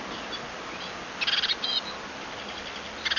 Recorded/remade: recorded